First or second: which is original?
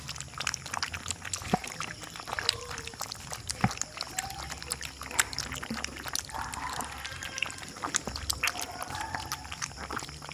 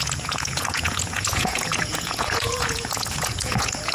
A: first